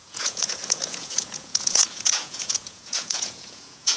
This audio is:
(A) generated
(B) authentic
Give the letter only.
A